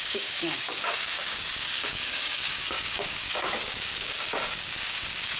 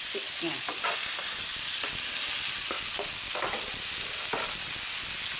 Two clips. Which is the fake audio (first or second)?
first